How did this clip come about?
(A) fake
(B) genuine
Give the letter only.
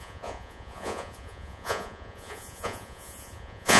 A